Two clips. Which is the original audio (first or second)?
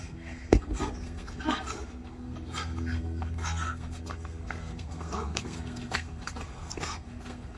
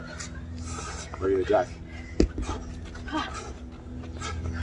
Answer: second